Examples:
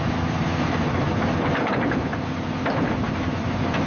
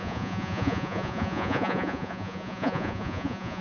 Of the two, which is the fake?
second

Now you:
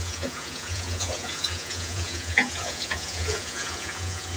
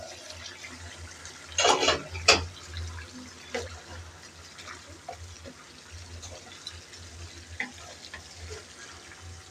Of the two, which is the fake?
first